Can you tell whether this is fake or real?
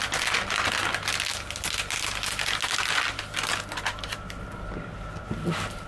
real